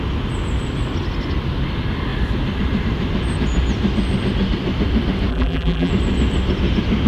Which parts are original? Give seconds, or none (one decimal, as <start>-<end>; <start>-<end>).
0.0-5.3; 5.9-7.1